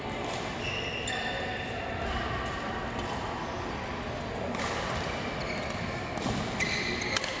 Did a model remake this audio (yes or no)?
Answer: no